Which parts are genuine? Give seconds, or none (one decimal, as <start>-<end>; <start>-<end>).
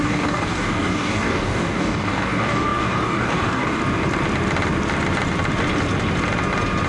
3.8-6.9